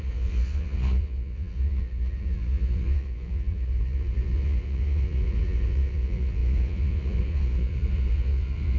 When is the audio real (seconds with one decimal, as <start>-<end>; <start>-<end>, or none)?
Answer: none